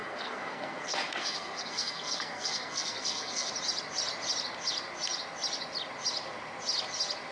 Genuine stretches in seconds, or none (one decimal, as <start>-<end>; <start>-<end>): 3.5-7.3